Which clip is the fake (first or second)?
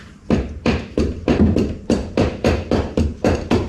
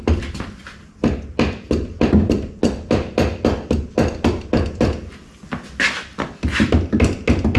first